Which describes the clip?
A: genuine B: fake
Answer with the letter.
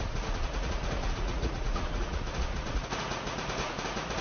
B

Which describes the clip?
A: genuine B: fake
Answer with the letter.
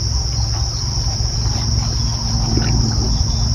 A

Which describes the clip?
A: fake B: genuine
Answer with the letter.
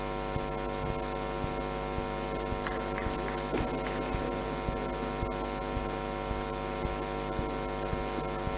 B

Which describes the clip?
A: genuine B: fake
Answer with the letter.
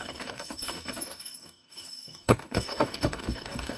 B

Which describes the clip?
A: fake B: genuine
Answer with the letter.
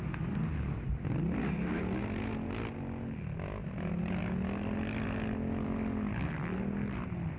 B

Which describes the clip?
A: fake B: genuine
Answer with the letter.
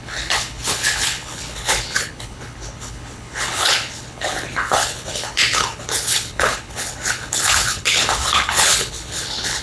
A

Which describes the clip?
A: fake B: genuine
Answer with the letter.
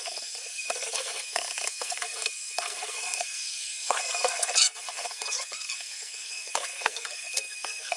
A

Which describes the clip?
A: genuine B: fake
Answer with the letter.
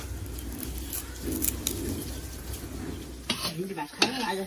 A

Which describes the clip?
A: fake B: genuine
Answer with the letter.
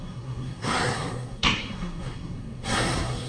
A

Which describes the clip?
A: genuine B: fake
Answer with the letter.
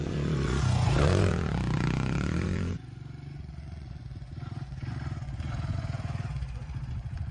B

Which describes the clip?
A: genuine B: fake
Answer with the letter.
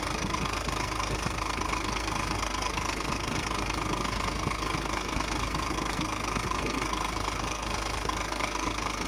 B